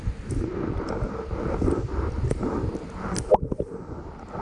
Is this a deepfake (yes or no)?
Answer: no